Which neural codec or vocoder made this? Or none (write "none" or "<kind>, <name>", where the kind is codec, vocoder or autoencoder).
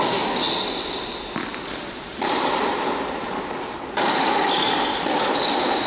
vocoder, BigVGAN v2